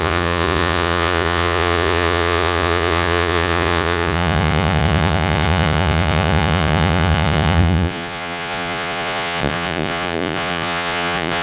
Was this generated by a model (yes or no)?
yes